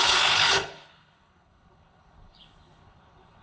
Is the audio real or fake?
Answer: fake